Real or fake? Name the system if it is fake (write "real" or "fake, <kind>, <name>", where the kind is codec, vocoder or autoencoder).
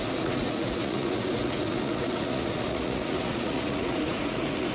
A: fake, vocoder, Vocos